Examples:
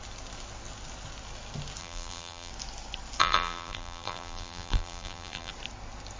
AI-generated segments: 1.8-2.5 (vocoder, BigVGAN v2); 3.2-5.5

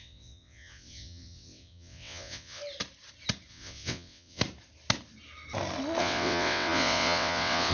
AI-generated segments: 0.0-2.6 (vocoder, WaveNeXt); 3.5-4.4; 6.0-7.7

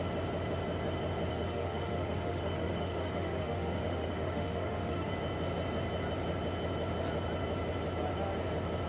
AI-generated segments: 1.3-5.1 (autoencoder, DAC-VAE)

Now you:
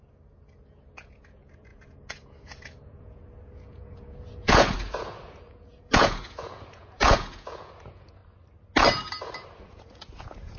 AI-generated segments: 0.0-8.2 (vocoder, Vocos); 9.6-10.6

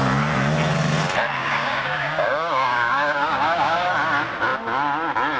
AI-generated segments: 1.4-3.9 (codec, DAC)